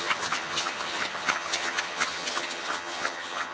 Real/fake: fake